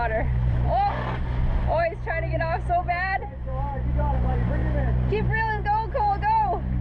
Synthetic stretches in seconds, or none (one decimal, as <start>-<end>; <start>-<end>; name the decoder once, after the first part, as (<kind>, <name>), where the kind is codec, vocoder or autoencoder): 0.0-4.6 (vocoder, BigVGAN v2); 5.1-6.8